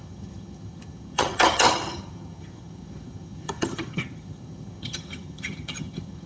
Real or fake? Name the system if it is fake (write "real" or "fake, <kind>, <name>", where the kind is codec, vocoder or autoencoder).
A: fake, vocoder, HiFi-GAN